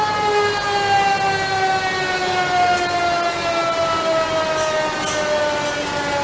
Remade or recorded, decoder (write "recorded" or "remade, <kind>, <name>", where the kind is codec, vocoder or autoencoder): recorded